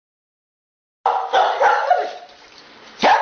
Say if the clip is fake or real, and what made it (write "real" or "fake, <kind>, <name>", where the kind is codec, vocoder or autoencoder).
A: real